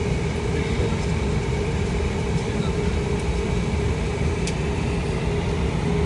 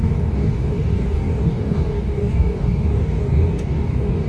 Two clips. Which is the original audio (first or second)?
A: first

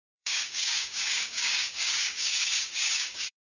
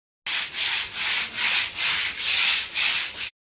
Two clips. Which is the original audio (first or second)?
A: second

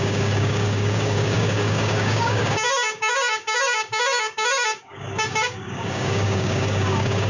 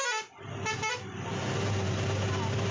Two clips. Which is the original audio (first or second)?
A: second